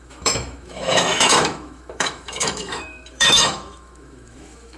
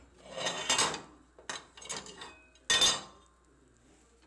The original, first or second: second